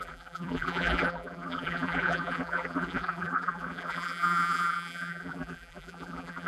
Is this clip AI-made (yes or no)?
yes